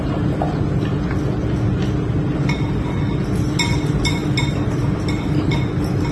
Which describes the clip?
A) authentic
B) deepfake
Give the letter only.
A